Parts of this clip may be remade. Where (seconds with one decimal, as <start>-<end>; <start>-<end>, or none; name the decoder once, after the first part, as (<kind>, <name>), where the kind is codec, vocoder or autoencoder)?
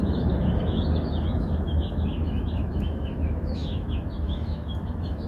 0.0-5.3 (autoencoder, DAC-VAE)